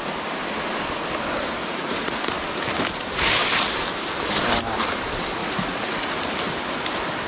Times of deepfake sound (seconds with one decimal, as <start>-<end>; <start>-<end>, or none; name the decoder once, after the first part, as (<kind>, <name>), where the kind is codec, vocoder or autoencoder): 1.6-2.2 (vocoder, Vocos); 5.4-6.2